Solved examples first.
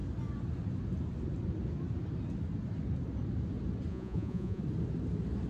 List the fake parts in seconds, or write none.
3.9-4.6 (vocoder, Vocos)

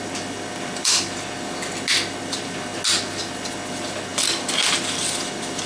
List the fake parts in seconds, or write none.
none

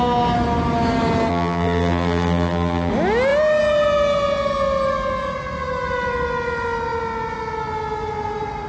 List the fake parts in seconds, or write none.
1.3-2.9 (vocoder, BigVGAN v2)

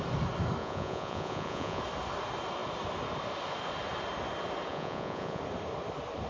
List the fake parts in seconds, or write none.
0.6-1.8 (vocoder, Vocos); 4.7-5.4

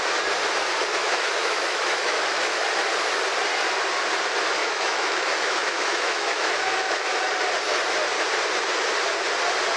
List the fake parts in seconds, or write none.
1.0-2.6 (autoencoder, DAC-VAE); 4.6-7.2

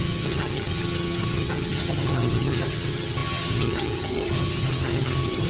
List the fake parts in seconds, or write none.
0.0-5.5 (vocoder, HiFi-GAN)